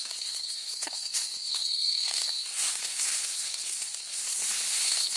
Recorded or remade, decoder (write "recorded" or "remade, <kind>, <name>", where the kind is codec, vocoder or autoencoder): remade, codec, SNAC